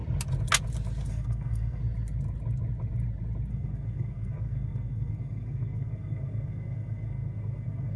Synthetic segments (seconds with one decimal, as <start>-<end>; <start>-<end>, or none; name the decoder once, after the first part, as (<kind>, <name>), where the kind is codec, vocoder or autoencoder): 1.1-1.8 (codec, SNAC); 3.5-8.0